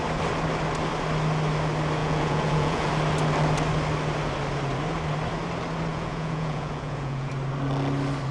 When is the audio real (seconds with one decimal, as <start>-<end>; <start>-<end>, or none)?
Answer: 0.0-2.0; 2.9-5.9; 7.3-8.3